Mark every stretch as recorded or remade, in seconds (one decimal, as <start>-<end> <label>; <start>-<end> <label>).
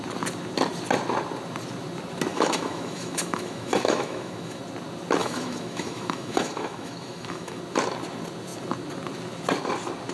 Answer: 0.0-2.3 recorded; 2.3-4.6 remade; 4.6-5.2 recorded; 5.2-7.6 remade; 7.6-10.1 recorded